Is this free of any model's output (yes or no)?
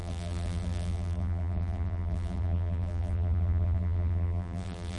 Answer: no